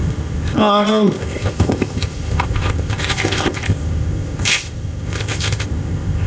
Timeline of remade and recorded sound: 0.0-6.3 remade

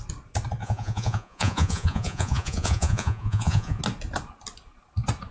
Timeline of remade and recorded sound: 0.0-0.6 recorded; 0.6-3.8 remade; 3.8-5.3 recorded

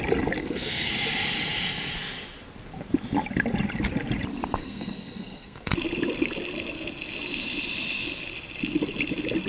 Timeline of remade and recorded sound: 0.0-0.4 recorded; 0.4-0.9 remade; 0.9-4.6 recorded; 4.6-5.7 remade; 5.7-9.5 recorded

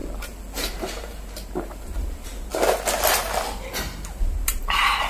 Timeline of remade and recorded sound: 0.0-0.6 recorded; 0.6-2.5 remade; 2.5-3.1 recorded; 3.1-5.1 remade

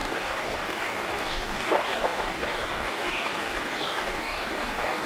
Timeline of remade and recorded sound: 0.0-5.1 remade

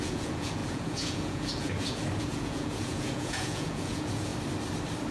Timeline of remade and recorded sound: 0.0-4.3 remade; 4.3-5.1 recorded

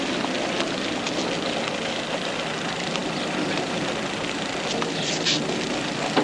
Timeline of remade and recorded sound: 0.0-6.2 recorded